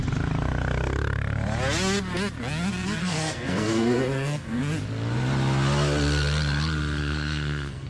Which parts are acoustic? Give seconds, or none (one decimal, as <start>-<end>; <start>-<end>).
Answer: 0.0-3.0; 4.6-7.0

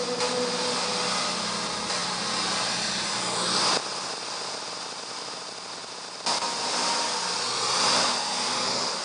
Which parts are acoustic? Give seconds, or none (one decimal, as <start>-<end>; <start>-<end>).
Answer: 0.0-9.0

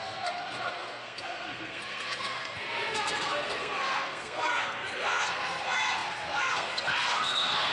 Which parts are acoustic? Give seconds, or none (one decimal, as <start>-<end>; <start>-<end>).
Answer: none

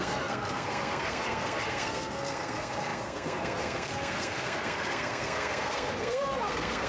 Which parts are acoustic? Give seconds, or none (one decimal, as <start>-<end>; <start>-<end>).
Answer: none

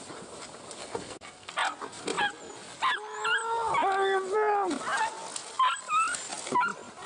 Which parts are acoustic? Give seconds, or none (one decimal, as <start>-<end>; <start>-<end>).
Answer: 0.0-0.8; 1.5-7.1

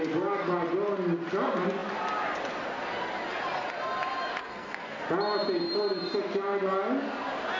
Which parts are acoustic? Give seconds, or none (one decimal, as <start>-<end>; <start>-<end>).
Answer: 0.0-4.4; 5.0-7.6

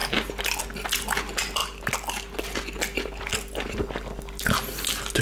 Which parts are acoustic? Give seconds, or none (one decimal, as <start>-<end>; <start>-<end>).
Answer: 0.0-5.2

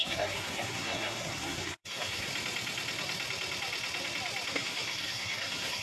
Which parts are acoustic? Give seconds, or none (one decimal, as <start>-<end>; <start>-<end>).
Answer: 2.3-4.5